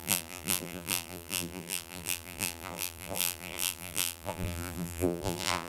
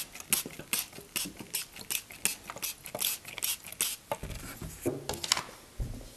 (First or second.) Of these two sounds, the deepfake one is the first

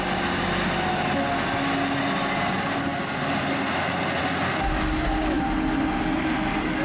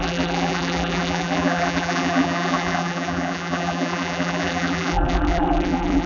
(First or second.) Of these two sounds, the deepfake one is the second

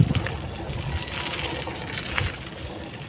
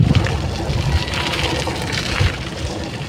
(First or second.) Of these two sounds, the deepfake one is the second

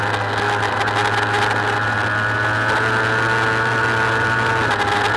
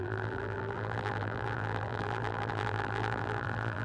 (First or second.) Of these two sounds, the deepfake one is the second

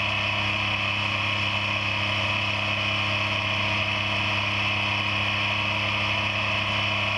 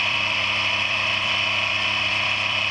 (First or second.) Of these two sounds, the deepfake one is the second